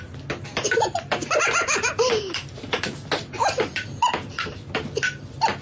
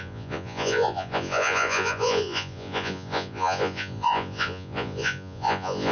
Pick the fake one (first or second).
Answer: second